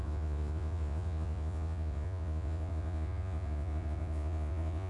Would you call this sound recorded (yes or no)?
no